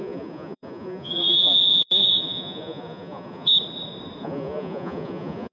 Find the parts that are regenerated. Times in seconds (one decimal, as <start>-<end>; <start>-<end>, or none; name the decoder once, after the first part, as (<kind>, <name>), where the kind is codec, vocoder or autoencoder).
0.0-3.5 (vocoder, Vocos); 4.2-5.5